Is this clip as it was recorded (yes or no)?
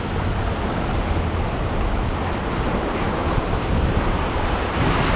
yes